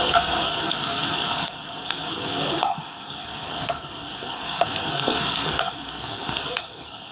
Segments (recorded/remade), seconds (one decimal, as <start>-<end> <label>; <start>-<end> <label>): 0.0-7.1 remade